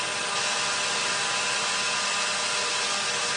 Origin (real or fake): real